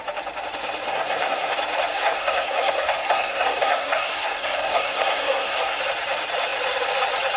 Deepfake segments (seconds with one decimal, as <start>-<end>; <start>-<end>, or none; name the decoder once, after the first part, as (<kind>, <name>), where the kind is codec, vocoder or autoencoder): 0.9-1.5 (codec, SNAC); 1.9-5.8